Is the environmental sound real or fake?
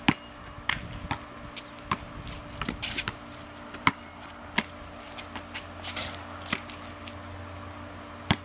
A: real